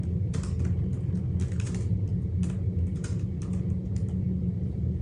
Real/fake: real